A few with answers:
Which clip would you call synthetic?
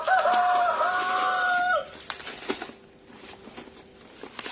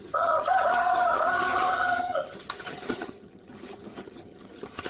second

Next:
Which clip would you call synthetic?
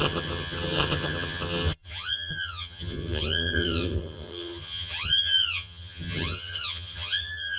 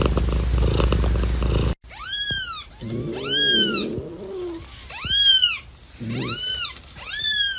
first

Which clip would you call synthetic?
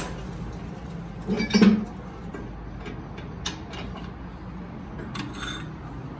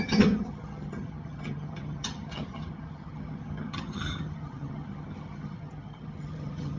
second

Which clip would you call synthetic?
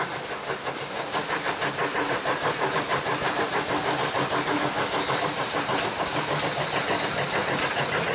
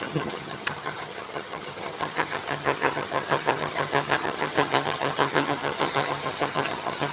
second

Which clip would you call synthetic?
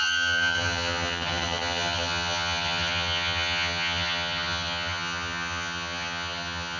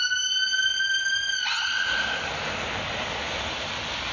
first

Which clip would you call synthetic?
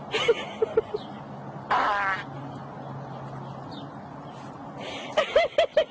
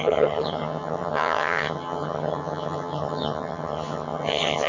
second